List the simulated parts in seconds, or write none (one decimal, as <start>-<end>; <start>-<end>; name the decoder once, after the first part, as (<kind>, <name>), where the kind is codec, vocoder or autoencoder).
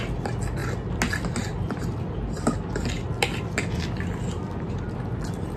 none